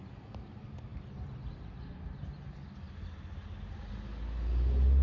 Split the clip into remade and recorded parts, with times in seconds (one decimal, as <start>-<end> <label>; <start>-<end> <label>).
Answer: 0.0-5.0 recorded